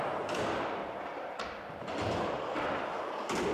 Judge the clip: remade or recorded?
remade